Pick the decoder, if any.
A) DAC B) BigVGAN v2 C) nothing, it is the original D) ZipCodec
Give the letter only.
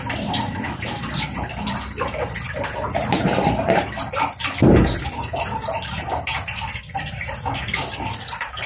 B